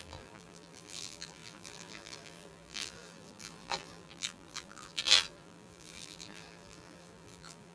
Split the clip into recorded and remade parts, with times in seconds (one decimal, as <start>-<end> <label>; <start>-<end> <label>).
0.0-7.7 remade